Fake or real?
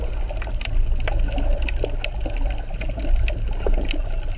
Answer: real